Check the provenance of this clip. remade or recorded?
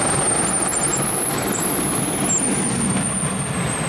recorded